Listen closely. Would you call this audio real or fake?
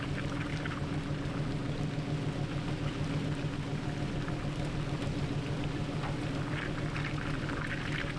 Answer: real